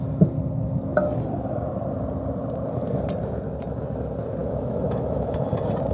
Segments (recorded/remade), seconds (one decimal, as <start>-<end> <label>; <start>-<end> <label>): 0.0-4.4 recorded; 4.4-5.5 remade; 5.5-5.9 recorded